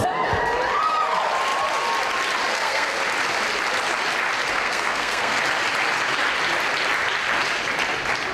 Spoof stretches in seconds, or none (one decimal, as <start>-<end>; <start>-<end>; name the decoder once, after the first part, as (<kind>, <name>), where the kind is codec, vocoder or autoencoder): 2.5-3.0 (codec, SNAC); 4.5-5.4